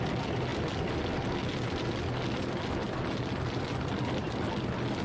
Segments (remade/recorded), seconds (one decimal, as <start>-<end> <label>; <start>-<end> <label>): 0.0-5.0 recorded